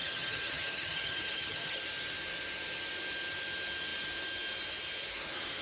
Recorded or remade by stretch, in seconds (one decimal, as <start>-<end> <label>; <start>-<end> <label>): 0.0-1.8 remade; 1.8-5.6 recorded